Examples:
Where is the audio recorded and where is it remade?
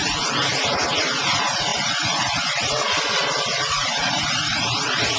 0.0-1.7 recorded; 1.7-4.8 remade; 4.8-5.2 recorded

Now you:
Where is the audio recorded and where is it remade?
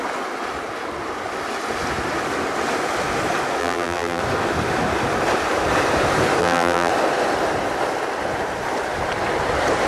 0.0-3.6 recorded; 3.6-4.2 remade; 4.2-6.4 recorded; 6.4-6.9 remade; 6.9-9.9 recorded